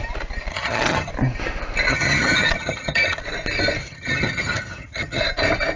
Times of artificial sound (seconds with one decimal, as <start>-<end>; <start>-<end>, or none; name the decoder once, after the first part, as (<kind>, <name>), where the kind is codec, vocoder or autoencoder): 0.5-1.1 (vocoder, HiFi-GAN); 1.9-3.2; 3.8-5.2